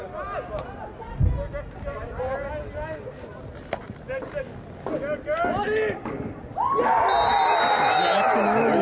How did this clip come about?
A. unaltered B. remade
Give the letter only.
A